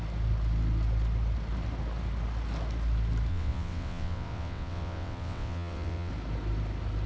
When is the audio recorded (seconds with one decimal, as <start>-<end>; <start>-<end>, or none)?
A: 0.0-3.3; 6.1-7.1